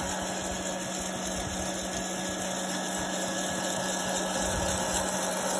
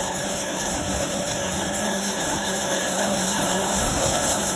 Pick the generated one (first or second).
second